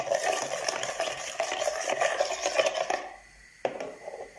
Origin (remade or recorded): recorded